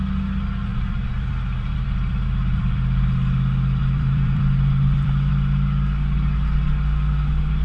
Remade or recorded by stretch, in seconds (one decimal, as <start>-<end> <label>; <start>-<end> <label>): 0.0-0.7 recorded; 0.7-5.3 remade; 5.3-7.6 recorded